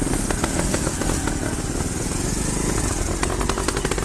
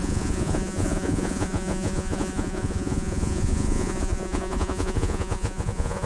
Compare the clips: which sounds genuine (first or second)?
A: first